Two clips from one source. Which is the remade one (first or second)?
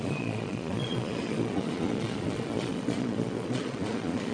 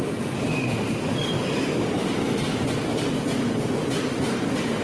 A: first